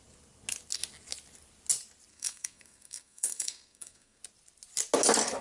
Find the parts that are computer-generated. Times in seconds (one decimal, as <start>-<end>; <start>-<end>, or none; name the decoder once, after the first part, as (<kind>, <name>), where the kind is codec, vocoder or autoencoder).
2.1-4.2 (codec, SNAC)